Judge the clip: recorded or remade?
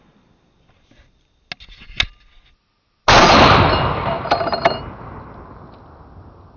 recorded